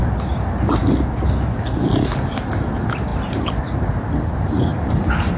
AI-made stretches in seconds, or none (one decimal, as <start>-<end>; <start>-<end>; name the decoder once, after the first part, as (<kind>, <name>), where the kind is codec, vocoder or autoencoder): none